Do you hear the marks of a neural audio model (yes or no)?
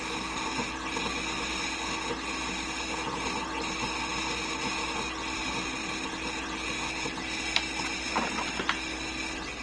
no